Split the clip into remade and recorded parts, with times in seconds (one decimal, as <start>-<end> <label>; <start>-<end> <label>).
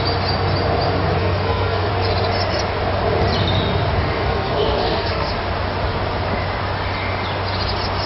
0.0-1.2 recorded; 1.2-1.9 remade; 1.9-4.0 recorded; 4.0-5.3 remade; 5.3-8.1 recorded